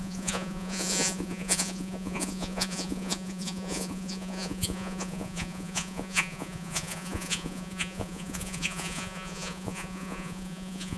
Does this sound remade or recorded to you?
remade